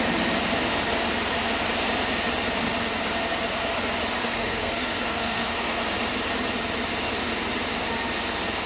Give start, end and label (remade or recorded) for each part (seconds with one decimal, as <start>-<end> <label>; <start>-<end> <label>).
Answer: 0.0-4.2 recorded; 4.2-5.8 remade; 5.8-8.7 recorded